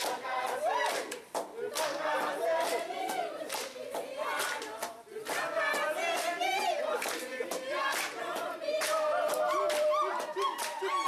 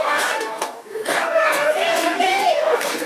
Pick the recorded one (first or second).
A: first